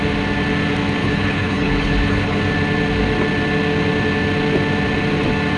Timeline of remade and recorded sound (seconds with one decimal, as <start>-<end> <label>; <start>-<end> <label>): 0.0-1.0 recorded; 1.0-2.4 remade; 2.4-5.6 recorded